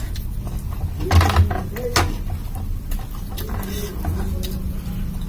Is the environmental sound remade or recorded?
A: recorded